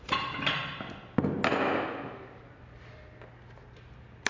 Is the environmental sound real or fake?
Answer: real